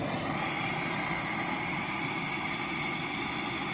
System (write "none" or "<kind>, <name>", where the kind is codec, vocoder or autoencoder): none